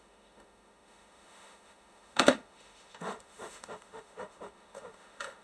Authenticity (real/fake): fake